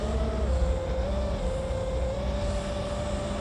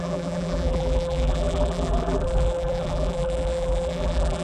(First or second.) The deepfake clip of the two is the second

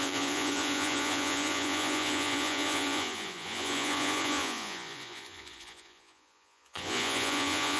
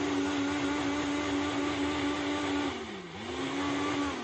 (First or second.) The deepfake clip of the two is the first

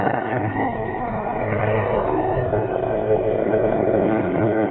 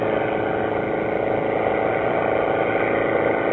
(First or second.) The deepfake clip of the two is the first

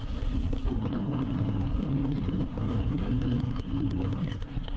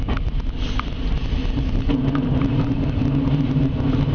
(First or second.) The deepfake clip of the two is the first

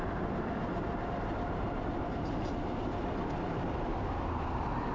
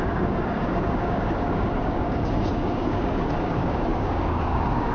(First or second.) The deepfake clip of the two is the second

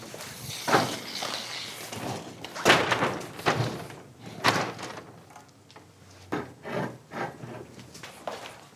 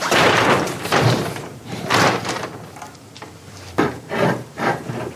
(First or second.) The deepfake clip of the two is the second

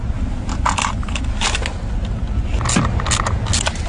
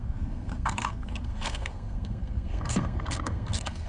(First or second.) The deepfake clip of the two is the second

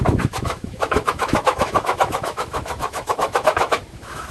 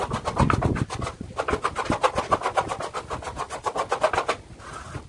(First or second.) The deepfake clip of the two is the first